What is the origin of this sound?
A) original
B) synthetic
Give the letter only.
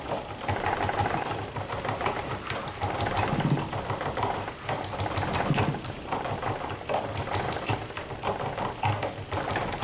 A